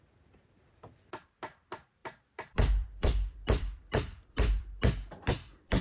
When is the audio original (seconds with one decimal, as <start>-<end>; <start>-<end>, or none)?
0.0-2.0